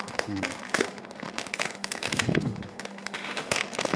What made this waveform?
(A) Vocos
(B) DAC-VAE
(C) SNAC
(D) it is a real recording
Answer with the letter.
B